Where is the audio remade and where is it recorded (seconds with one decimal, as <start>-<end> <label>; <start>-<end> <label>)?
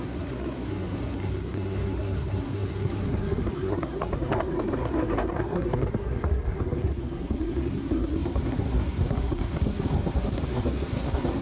0.0-11.4 remade